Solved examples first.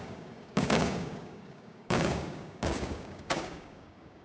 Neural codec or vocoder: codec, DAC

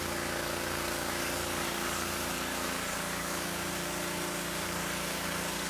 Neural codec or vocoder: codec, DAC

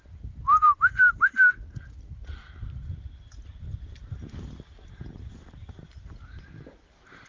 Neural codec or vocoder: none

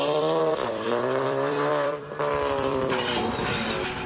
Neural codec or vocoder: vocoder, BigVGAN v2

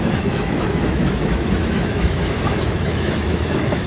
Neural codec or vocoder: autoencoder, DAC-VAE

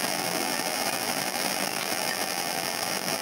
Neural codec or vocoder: vocoder, BigVGAN v2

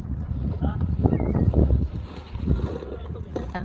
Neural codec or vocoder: vocoder, Vocos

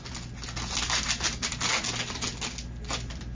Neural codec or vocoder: none